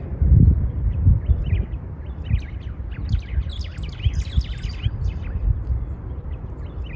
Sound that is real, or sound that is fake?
real